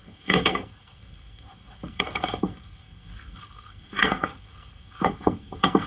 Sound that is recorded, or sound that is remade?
remade